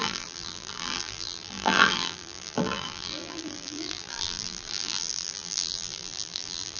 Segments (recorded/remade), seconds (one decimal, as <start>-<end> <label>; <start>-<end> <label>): 0.0-6.8 remade